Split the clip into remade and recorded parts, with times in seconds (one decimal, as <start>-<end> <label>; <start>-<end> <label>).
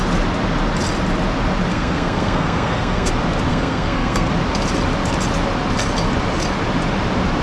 0.0-1.7 recorded; 1.7-3.1 remade; 3.1-3.5 recorded; 3.5-4.3 remade; 4.3-7.4 recorded